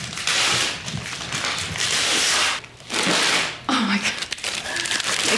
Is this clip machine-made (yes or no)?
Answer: yes